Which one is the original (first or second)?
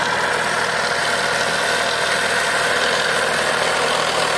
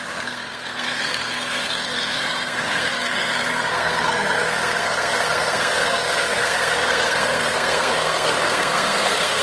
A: first